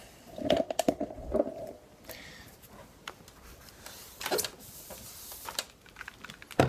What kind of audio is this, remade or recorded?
recorded